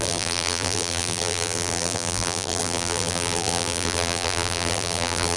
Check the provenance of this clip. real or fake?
fake